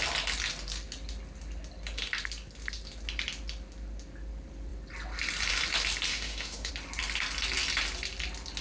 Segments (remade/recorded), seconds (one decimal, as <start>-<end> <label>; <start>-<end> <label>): 0.0-6.1 recorded; 6.1-6.7 remade; 6.7-8.6 recorded